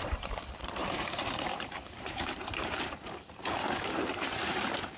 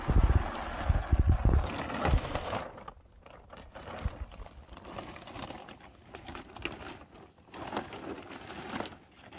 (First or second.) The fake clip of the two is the first